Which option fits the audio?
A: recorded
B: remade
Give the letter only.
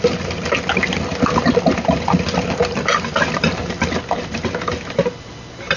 A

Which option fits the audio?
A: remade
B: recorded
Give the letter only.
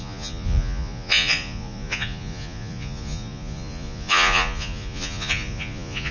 A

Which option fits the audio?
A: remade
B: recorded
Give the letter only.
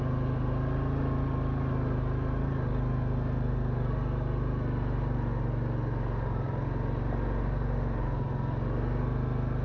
B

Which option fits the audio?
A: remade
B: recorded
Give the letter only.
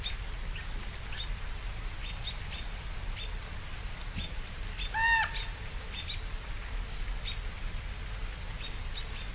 B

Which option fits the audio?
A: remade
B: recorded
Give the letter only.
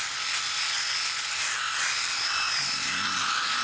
B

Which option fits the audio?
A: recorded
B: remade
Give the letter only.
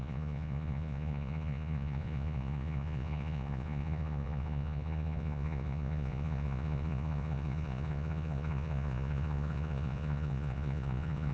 B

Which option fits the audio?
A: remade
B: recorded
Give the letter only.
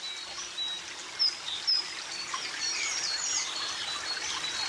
B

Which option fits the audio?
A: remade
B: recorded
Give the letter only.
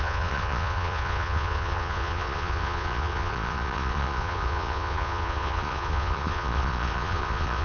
A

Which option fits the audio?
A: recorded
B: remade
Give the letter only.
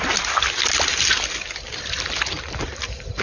A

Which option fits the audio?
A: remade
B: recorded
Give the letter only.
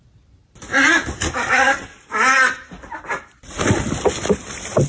B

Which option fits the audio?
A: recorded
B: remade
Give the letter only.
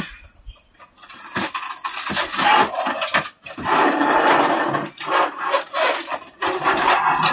A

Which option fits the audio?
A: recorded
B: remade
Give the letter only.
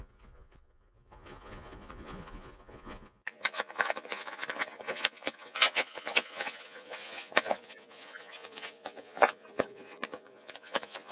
B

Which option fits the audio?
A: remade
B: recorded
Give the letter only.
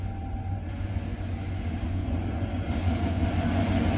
A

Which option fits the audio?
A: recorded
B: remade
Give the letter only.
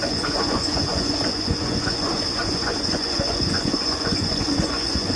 B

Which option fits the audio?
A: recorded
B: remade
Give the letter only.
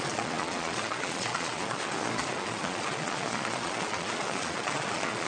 B